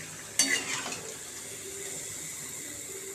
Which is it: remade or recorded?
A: recorded